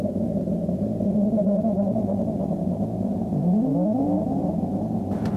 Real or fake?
fake